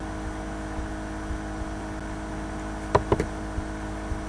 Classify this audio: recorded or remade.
recorded